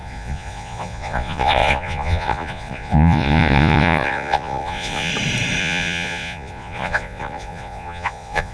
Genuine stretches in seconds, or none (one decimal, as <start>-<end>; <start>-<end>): 5.1-5.6